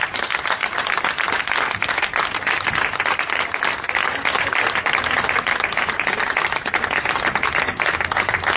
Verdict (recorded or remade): recorded